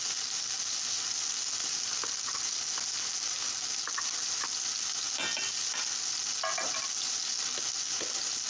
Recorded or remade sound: recorded